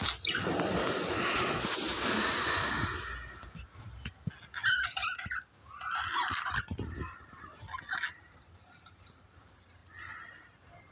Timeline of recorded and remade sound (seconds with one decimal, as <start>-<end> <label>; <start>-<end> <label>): 0.0-10.9 recorded